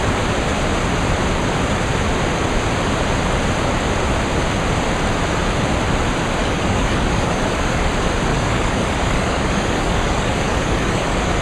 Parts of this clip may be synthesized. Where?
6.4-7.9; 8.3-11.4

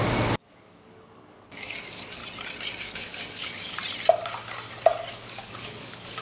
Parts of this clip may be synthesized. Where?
0.0-2.2; 2.8-3.8; 5.1-6.2

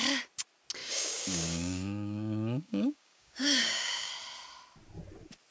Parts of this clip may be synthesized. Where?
0.8-4.1

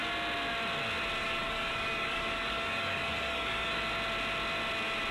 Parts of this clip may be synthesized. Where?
1.2-3.8

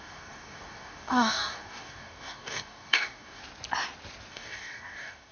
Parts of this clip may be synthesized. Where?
0.0-3.4; 4.3-5.3

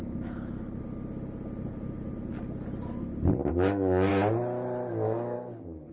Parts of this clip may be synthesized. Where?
3.5-4.1; 4.9-5.9

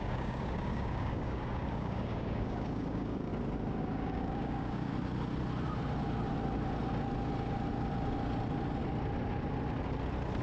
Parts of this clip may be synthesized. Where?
0.0-3.3; 3.8-4.9

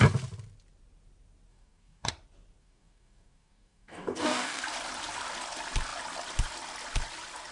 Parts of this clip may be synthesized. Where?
1.5-2.1; 2.6-4.6